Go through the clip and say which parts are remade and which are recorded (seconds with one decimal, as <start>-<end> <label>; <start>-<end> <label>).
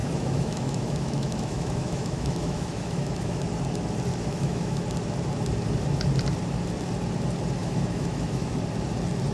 0.0-3.4 remade; 3.4-4.1 recorded; 4.1-4.8 remade; 4.8-7.6 recorded; 7.6-8.5 remade; 8.5-9.3 recorded